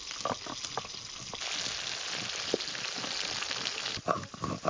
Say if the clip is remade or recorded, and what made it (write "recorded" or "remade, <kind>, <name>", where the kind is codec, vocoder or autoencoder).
recorded